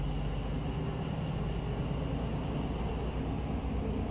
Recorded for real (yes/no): yes